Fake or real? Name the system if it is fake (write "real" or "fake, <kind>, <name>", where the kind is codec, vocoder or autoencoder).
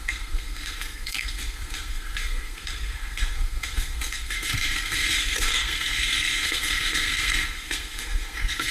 fake, codec, SNAC